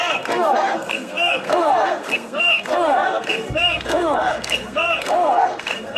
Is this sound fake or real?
fake